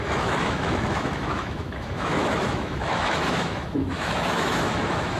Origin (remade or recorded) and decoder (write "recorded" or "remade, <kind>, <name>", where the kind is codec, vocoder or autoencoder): remade, autoencoder, DAC-VAE